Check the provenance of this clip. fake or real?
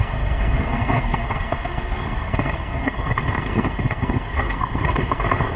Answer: fake